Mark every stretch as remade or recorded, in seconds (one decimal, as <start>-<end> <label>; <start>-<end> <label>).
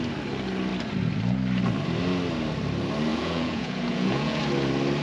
0.0-3.1 recorded; 3.1-4.4 remade; 4.4-5.0 recorded